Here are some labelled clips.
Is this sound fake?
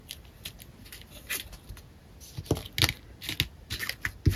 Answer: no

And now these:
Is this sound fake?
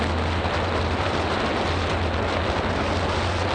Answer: no